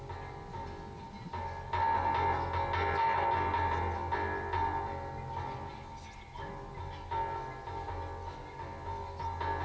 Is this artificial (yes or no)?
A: no